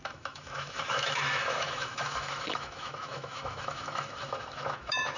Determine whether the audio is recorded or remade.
remade